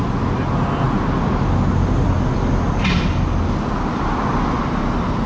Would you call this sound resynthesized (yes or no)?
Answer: no